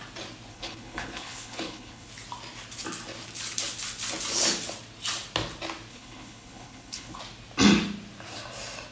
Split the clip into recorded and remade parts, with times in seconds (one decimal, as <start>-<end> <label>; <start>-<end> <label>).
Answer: 0.0-0.5 recorded; 0.5-2.1 remade; 2.1-5.9 recorded; 5.9-7.2 remade; 7.2-8.9 recorded